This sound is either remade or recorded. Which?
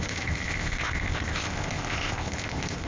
remade